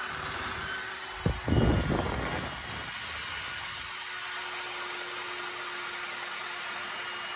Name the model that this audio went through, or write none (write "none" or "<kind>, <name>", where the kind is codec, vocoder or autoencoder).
none